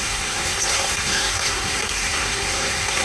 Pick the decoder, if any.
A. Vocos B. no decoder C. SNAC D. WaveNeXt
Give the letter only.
C